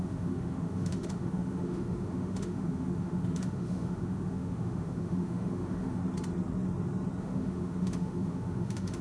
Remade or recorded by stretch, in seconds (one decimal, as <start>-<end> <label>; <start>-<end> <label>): 0.0-6.0 remade; 6.0-7.2 recorded; 7.2-9.0 remade